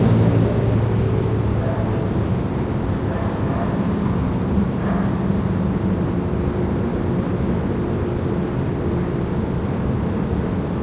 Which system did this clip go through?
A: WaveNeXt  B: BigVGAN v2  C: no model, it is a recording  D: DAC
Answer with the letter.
C